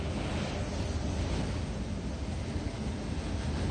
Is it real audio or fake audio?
real